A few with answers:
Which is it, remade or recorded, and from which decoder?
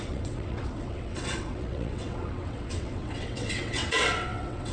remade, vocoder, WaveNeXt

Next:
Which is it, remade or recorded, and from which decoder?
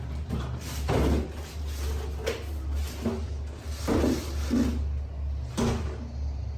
recorded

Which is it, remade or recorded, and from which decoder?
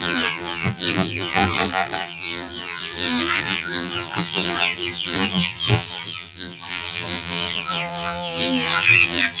remade, vocoder, BigVGAN v2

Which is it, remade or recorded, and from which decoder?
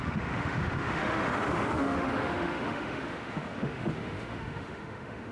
remade, autoencoder, DAC-VAE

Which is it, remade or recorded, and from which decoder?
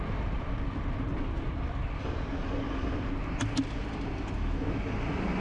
recorded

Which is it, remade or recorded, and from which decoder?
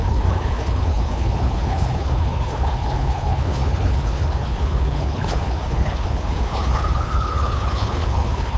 remade, codec, HILCodec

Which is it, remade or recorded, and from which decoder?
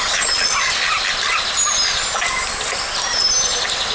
recorded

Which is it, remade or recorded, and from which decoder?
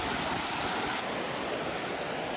recorded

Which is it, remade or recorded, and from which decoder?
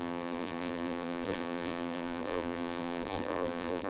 remade, vocoder, BigVGAN v2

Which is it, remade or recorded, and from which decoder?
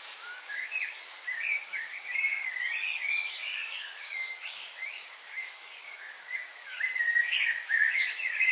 remade, codec, DAC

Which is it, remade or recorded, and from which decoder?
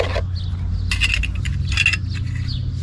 recorded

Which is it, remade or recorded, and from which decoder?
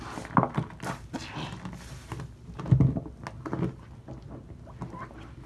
recorded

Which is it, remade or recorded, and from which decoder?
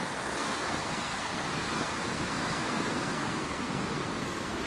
remade, codec, SNAC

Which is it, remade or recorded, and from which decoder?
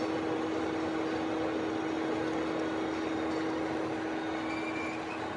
recorded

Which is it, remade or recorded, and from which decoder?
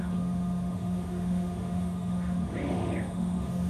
remade, autoencoder, DAC-VAE